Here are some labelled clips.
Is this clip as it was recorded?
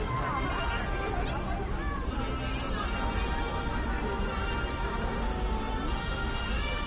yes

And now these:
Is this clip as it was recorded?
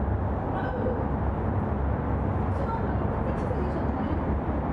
yes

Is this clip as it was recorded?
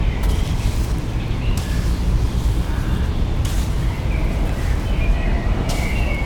no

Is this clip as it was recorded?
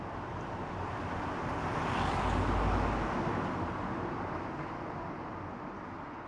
yes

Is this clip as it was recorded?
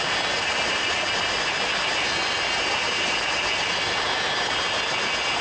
yes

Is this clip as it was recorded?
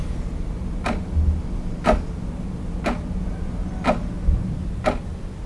yes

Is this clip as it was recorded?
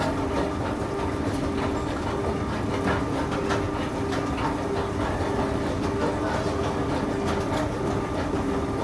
yes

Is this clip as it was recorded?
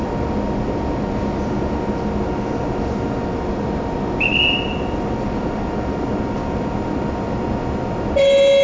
yes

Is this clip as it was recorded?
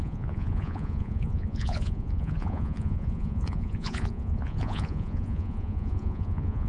no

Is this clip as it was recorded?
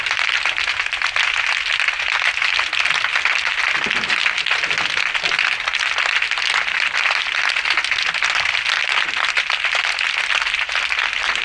yes